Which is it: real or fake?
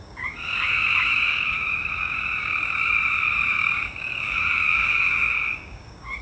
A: fake